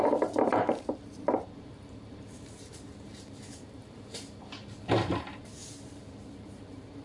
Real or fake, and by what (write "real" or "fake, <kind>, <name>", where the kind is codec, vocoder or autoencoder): fake, vocoder, BigVGAN v2